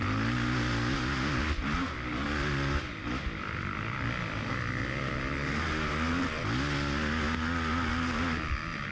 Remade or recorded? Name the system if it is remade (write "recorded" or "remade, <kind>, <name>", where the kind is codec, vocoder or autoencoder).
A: recorded